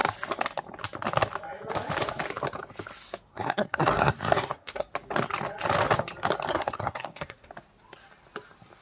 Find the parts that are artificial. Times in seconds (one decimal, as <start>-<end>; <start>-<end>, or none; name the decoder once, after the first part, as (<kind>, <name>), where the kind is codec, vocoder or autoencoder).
3.3-4.9 (codec, SNAC); 6.5-7.5